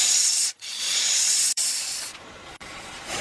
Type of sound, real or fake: fake